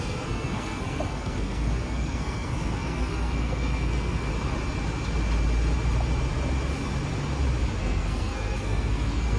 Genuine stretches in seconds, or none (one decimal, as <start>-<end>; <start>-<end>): 4.3-7.8